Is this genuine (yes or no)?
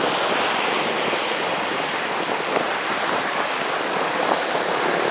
yes